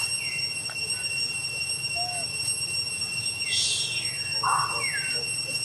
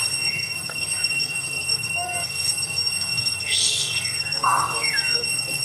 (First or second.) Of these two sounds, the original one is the first